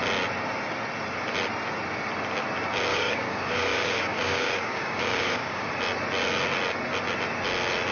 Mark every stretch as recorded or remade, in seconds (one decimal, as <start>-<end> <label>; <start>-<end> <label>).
0.0-2.9 recorded; 2.9-5.7 remade; 5.7-7.9 recorded